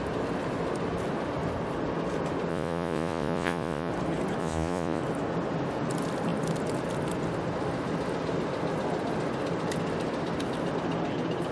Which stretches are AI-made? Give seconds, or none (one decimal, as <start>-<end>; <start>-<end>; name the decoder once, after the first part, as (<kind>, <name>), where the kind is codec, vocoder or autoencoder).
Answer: 2.5-3.9 (vocoder, Vocos); 4.4-5.0